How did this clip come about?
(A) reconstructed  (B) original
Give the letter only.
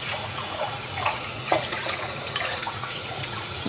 A